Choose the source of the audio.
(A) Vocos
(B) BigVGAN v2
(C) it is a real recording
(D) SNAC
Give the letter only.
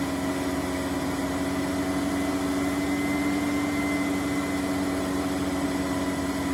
C